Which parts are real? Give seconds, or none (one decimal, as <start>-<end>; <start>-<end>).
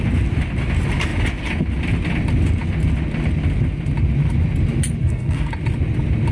0.0-5.0; 5.5-6.3